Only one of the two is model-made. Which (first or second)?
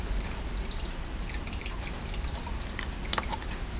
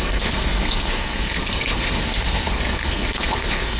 second